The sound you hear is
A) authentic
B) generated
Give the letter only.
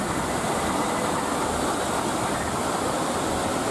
A